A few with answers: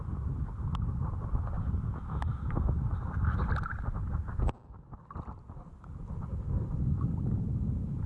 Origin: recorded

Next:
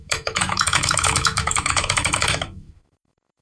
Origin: remade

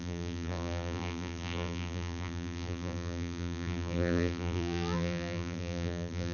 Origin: remade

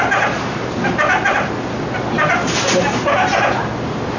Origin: recorded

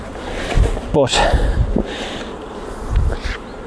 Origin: remade